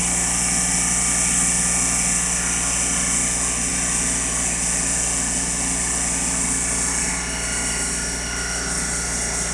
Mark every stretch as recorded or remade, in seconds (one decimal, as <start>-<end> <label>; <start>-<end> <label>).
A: 0.0-9.5 recorded